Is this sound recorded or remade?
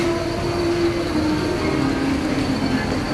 recorded